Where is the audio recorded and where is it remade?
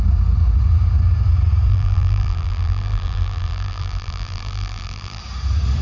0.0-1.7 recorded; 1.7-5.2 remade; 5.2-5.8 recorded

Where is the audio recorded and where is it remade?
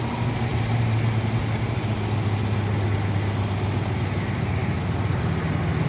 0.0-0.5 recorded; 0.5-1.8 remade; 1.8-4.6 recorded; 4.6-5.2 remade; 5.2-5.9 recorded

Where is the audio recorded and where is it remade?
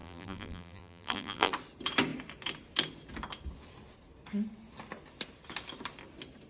0.0-1.5 remade; 1.5-6.5 recorded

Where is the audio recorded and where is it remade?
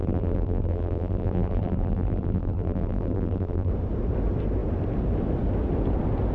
0.0-3.7 remade; 3.7-6.3 recorded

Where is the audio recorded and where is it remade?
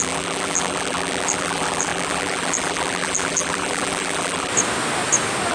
0.0-4.5 remade; 4.5-5.5 recorded